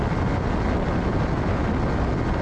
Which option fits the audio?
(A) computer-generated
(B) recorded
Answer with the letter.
B